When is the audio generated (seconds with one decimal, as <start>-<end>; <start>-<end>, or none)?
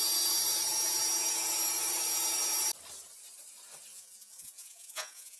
3.9-5.4